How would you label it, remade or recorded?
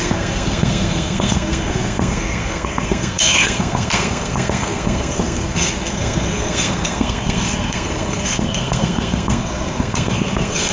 remade